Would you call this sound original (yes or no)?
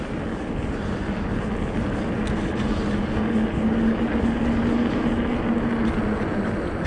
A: yes